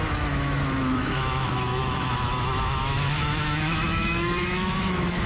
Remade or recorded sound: remade